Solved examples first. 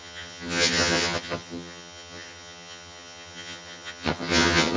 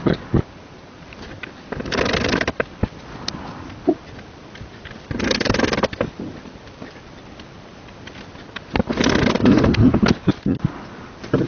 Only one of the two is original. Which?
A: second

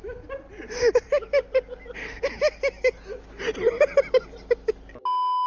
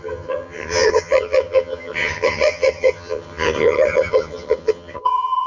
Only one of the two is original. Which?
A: first